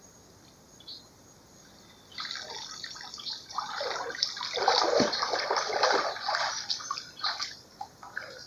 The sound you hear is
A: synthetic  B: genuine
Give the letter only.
B